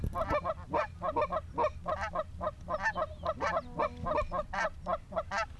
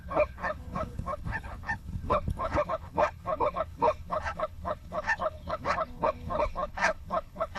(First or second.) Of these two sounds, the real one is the first